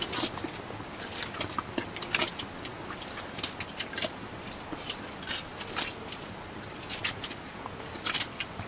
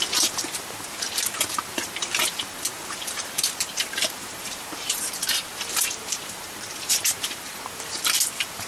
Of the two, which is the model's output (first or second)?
second